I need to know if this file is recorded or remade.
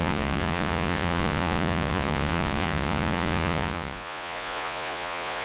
remade